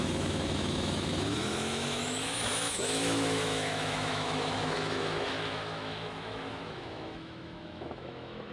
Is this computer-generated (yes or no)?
yes